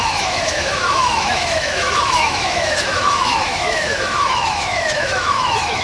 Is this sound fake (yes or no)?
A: yes